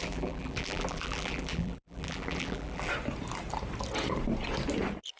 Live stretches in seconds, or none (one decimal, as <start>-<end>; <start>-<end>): 2.9-5.2